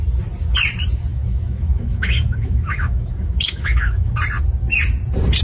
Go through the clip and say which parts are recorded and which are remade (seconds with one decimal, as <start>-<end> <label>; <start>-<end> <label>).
0.0-1.1 recorded; 1.1-4.1 remade; 4.1-5.4 recorded